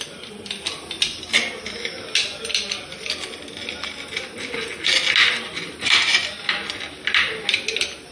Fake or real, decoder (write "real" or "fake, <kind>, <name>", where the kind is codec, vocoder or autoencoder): real